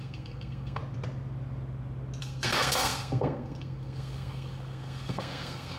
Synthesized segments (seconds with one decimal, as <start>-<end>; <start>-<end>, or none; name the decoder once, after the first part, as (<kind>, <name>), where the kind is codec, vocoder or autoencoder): 0.0-0.8 (codec, SNAC); 2.2-5.8